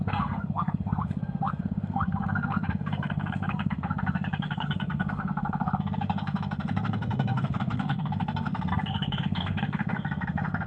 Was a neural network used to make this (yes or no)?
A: yes